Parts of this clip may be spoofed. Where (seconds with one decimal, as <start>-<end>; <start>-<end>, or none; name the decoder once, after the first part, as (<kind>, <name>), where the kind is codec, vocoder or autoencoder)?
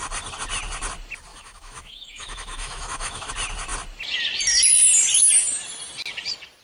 1.3-3.3 (autoencoder, DAC-VAE)